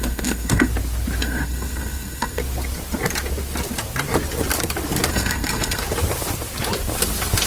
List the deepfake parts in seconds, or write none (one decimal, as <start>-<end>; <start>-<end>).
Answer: 0.0-0.7; 1.2-2.4; 5.1-5.8